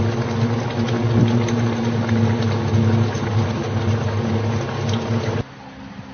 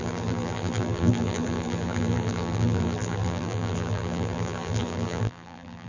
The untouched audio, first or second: first